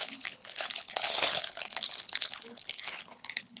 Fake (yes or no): yes